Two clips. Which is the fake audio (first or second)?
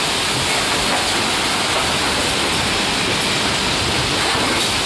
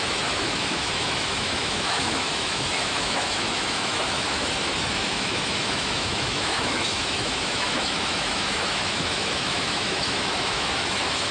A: second